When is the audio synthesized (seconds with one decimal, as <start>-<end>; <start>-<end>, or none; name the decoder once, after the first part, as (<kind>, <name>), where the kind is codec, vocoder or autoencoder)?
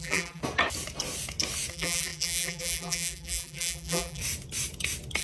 0.0-0.4 (vocoder, BigVGAN v2); 1.7-4.2